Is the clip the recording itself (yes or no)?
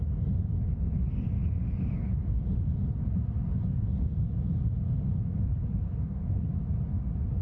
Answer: yes